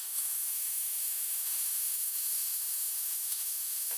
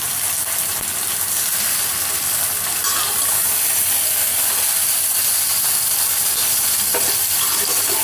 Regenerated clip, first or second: first